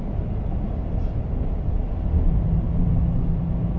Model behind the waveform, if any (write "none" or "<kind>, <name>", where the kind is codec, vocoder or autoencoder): none